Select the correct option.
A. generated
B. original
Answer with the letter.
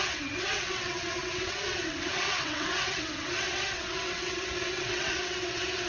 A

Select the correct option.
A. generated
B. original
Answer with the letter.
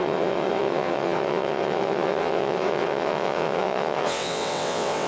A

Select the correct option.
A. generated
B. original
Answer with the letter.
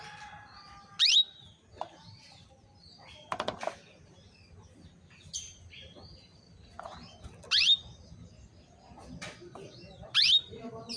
B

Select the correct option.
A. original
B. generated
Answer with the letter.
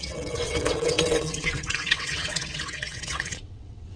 B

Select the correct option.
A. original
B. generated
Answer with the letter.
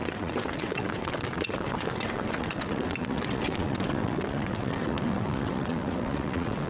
B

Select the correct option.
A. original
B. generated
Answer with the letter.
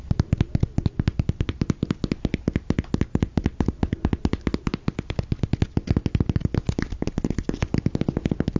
A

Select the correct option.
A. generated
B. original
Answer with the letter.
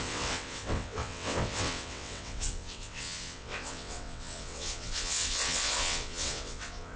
A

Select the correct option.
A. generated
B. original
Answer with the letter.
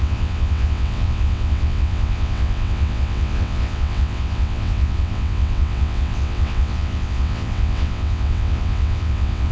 A